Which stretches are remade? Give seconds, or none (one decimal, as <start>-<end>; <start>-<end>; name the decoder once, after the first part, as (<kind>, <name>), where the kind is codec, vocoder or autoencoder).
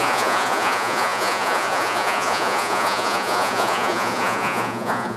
0.0-5.2 (vocoder, Vocos)